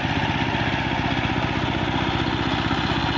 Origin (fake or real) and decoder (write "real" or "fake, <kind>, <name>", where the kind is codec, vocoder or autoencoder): real